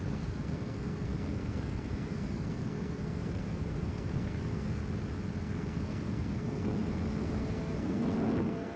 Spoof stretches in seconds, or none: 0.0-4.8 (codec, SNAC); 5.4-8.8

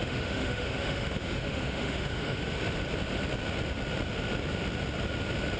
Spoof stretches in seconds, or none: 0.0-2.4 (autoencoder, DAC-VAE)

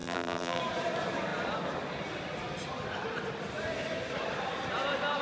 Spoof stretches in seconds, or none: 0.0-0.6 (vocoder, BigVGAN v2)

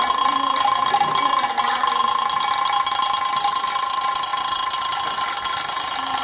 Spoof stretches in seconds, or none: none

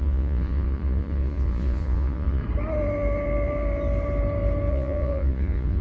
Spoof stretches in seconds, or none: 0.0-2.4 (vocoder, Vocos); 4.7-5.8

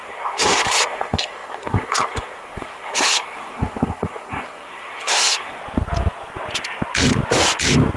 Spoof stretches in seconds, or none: 0.0-5.6 (codec, SNAC)

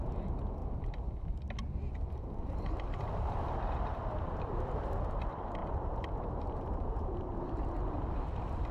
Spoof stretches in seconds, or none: 5.6-7.7 (vocoder, BigVGAN v2)

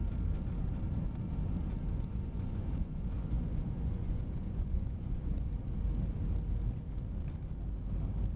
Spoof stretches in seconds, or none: 2.1-5.5 (vocoder, Vocos)